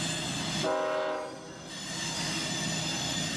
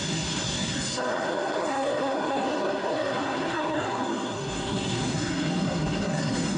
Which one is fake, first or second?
second